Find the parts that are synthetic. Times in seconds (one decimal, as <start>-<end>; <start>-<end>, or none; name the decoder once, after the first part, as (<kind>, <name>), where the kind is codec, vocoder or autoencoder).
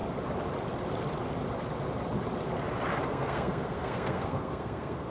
3.1-5.1 (codec, SNAC)